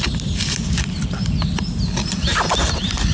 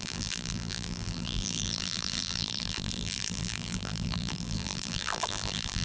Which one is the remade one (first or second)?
second